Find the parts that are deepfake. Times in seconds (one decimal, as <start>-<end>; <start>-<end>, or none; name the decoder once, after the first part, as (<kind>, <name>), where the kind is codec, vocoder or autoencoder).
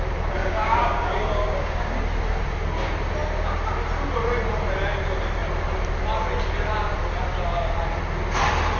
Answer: 0.4-2.0 (codec, DAC)